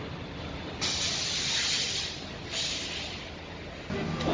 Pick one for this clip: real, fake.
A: real